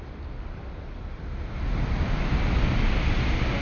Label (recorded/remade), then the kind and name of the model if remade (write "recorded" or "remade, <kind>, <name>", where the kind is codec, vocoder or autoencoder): recorded